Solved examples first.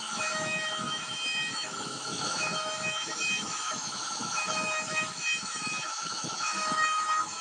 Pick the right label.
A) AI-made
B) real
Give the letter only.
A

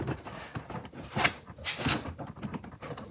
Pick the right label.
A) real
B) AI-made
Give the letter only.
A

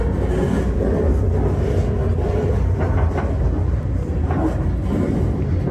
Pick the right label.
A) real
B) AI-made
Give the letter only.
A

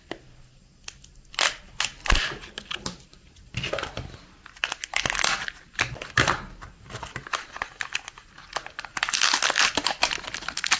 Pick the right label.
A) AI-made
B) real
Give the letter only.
B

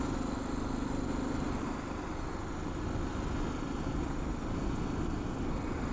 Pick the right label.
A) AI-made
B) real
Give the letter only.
B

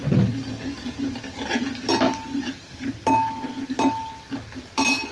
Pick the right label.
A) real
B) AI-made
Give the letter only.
A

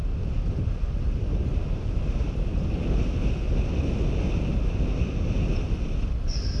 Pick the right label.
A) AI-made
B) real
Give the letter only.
B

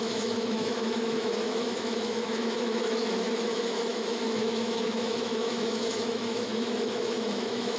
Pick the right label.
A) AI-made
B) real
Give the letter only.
A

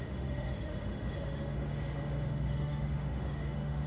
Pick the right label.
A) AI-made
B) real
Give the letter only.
A